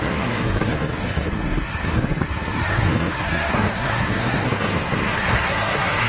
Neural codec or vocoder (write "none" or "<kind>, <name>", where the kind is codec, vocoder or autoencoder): codec, SNAC